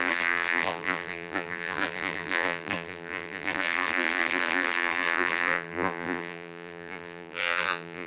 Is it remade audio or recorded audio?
remade